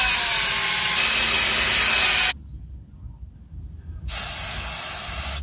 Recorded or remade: recorded